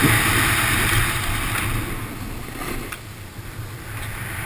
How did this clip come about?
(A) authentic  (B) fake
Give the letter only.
A